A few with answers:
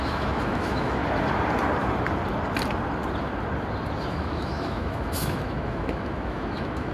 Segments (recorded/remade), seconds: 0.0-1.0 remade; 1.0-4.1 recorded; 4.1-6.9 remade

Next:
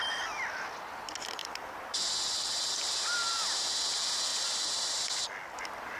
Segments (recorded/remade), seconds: 0.0-1.4 recorded; 1.4-3.8 remade; 3.8-4.3 recorded; 4.3-5.3 remade; 5.3-6.0 recorded